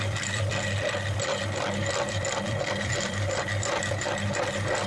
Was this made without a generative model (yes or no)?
no